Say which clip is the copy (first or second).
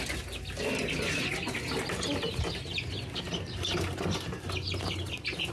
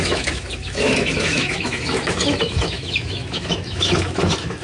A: second